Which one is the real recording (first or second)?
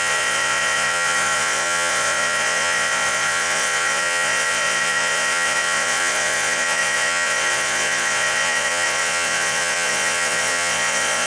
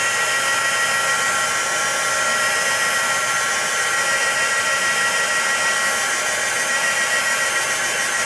second